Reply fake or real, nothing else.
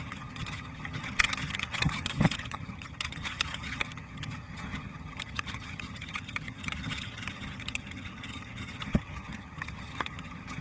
fake